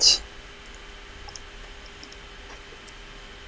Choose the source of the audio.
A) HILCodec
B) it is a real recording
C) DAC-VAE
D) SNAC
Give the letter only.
B